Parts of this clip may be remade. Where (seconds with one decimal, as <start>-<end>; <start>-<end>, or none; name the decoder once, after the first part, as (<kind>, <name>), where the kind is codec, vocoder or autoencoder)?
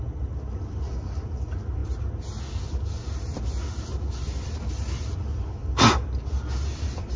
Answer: none